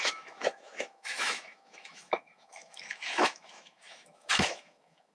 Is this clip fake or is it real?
fake